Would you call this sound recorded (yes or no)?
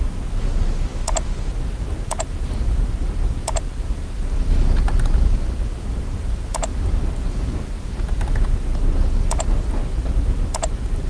yes